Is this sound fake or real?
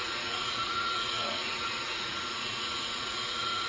fake